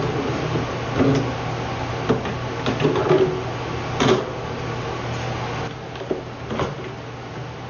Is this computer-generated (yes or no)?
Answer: no